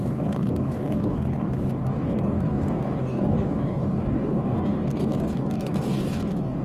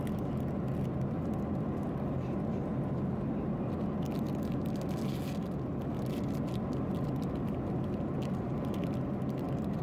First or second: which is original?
second